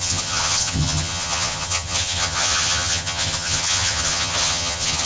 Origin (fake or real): fake